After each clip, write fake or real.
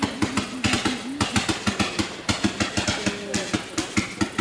real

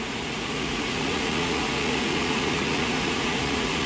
fake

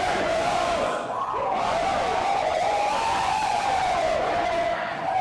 fake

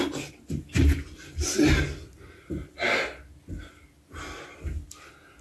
real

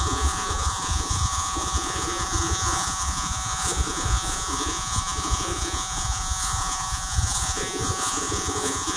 fake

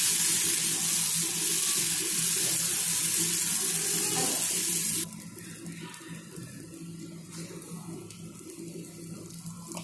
real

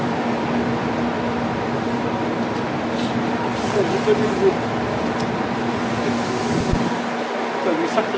real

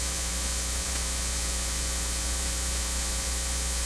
fake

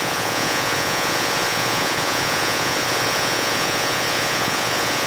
fake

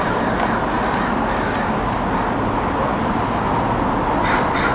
real